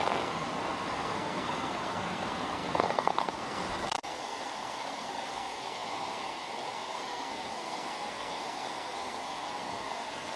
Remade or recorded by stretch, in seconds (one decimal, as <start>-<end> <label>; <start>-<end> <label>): 0.0-10.4 remade